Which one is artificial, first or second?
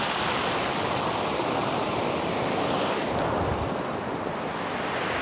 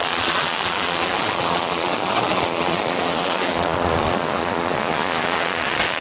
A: second